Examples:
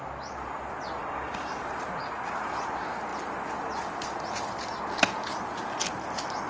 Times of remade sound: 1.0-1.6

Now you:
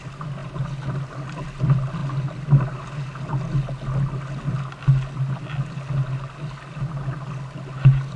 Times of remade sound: none

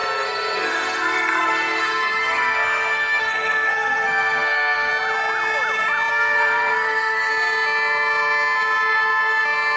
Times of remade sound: 0.0-4.9; 6.1-7.3

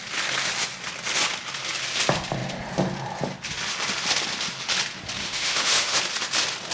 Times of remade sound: 5.2-6.0